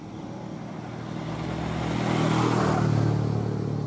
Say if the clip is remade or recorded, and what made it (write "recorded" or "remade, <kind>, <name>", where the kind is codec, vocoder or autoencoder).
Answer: recorded